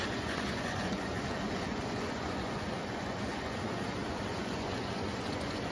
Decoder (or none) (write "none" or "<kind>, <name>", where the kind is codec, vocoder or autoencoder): vocoder, Vocos